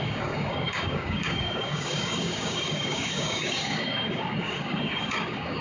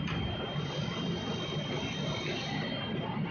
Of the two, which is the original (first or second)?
second